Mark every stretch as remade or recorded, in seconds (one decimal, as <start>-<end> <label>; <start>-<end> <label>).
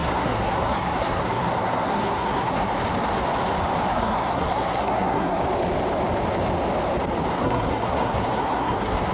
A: 0.0-2.7 remade; 2.7-3.9 recorded; 3.9-5.4 remade; 5.4-7.3 recorded; 7.3-9.1 remade